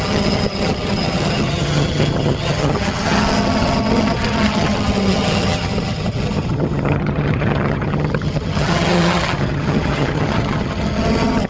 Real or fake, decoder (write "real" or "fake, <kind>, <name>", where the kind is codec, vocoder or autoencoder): fake, vocoder, HiFi-GAN